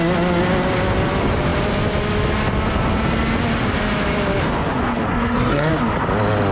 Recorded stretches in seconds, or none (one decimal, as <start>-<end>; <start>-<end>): 0.0-5.1; 5.7-6.5